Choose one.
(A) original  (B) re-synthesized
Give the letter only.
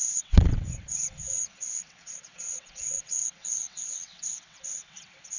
B